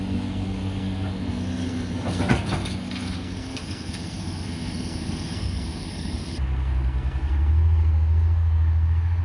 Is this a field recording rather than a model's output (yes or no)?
no